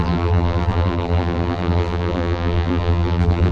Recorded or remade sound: remade